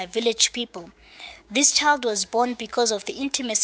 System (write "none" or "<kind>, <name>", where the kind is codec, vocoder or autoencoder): codec, DAC